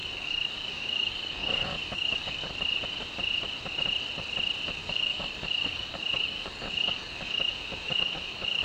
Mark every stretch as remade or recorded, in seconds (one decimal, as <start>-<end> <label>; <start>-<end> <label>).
0.0-2.5 remade; 2.5-4.8 recorded; 4.8-8.6 remade